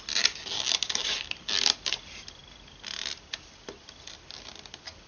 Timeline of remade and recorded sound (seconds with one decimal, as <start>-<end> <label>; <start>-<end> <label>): 0.0-5.1 recorded